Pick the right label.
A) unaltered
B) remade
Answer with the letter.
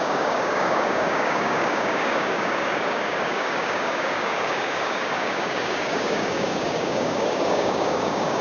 B